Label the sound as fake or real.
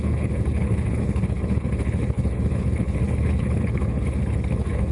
fake